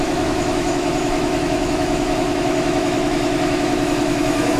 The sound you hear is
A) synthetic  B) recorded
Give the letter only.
A